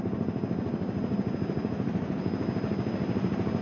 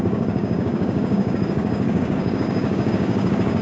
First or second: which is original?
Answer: first